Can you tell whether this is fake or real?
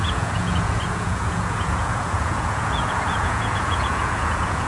fake